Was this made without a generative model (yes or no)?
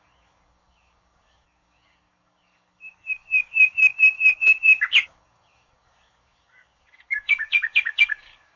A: no